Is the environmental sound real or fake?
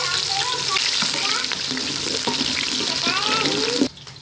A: real